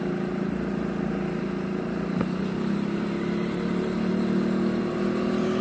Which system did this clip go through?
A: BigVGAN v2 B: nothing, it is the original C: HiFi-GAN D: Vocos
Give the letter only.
B